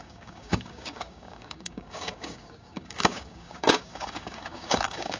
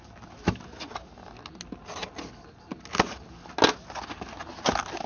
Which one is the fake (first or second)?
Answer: first